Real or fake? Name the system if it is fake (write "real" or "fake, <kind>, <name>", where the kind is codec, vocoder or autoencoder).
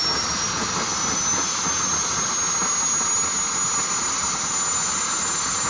real